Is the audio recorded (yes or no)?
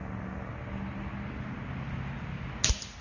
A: yes